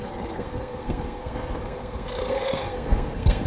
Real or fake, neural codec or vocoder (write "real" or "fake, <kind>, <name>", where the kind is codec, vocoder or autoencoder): fake, codec, SNAC